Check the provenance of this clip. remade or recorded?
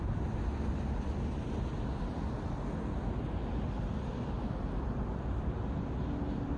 recorded